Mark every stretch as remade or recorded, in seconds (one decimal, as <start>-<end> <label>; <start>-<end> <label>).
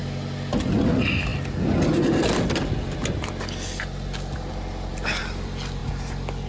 0.0-6.5 recorded